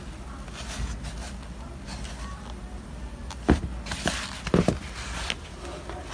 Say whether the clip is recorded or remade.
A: recorded